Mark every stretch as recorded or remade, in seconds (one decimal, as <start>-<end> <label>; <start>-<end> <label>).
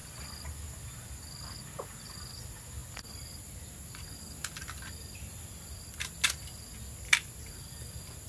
0.0-8.3 recorded